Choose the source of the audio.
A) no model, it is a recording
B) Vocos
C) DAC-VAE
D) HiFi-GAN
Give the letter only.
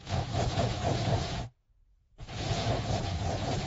B